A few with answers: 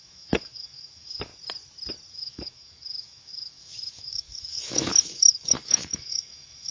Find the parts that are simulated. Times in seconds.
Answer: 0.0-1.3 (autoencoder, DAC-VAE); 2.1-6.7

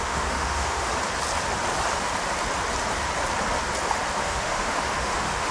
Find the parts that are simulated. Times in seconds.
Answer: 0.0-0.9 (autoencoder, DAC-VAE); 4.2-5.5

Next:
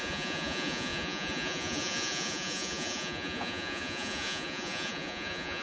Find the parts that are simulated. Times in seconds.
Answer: 0.0-5.6 (vocoder, Vocos)

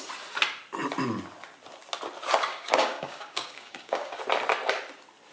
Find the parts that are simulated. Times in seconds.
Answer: 2.5-4.2 (codec, DAC)

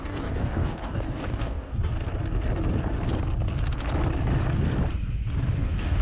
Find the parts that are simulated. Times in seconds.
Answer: 0.0-1.9 (codec, DAC); 5.5-6.0

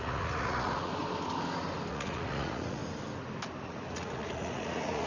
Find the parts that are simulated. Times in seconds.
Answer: 0.0-0.9 (vocoder, Vocos); 1.9-2.8; 3.6-5.1

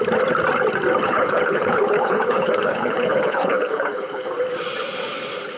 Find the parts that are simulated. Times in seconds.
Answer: 1.0-4.3 (codec, HILCodec)